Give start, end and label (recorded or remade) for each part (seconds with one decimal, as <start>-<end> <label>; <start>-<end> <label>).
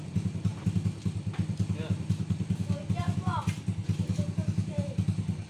0.0-5.5 recorded